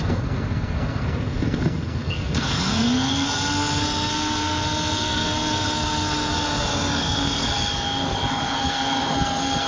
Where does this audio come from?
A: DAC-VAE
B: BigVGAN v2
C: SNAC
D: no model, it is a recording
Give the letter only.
C